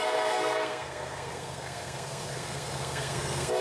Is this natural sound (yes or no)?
no